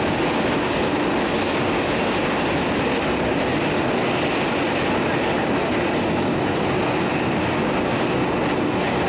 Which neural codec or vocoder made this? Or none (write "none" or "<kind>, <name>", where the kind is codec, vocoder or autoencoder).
none